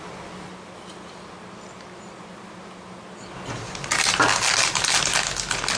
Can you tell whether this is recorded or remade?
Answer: recorded